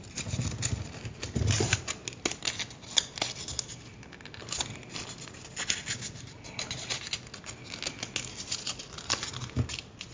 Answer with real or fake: real